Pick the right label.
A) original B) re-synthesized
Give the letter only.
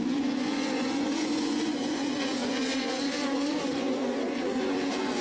B